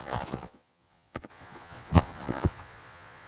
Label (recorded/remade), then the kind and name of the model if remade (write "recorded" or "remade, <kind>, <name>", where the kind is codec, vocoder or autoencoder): remade, vocoder, Vocos